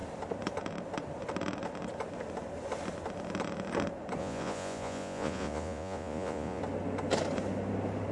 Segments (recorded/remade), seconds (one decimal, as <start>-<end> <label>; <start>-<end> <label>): 0.0-4.2 recorded; 4.2-6.6 remade; 6.6-8.1 recorded